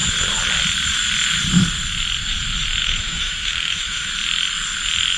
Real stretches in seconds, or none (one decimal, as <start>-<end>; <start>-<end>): 0.0-2.8; 4.1-5.2